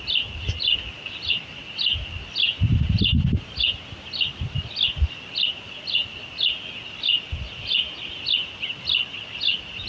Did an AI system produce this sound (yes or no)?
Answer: no